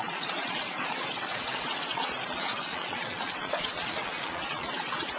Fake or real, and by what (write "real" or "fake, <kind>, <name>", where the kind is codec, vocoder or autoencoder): fake, vocoder, Vocos